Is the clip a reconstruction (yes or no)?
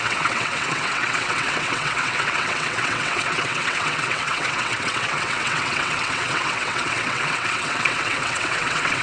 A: yes